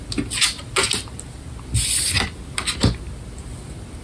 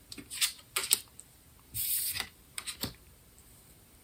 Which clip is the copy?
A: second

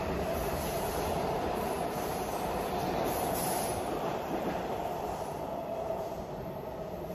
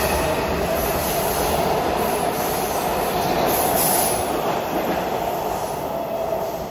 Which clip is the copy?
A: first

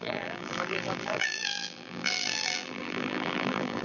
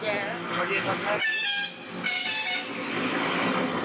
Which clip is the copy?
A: first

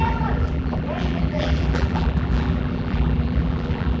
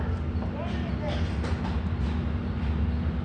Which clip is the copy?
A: first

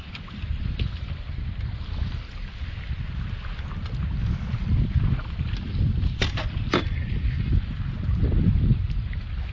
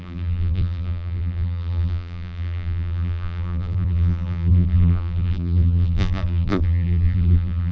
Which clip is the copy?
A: second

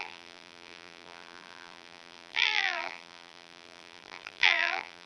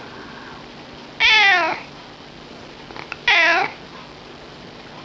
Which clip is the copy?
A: first